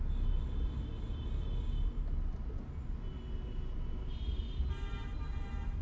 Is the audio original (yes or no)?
yes